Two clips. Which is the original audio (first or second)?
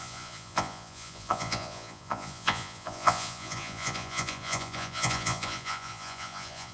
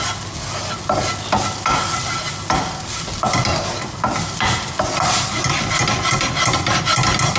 second